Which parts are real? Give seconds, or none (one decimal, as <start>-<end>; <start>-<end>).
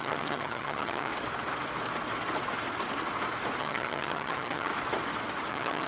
1.1-3.6; 4.7-5.5